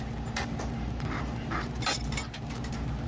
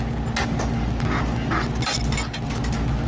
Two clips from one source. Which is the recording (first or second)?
second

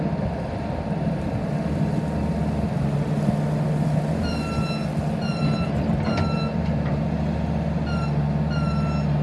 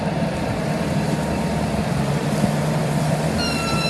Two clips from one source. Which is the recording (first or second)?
first